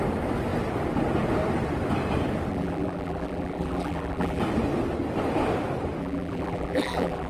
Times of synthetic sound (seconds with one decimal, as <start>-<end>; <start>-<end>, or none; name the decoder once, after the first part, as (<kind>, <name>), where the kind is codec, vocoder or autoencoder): 2.5-4.4 (vocoder, BigVGAN v2); 6.0-7.3